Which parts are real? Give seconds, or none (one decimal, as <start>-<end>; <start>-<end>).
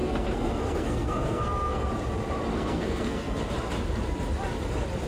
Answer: 1.9-2.5; 3.4-5.1